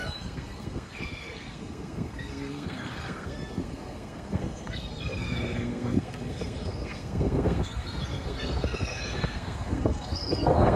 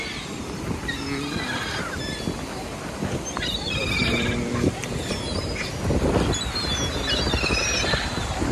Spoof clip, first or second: first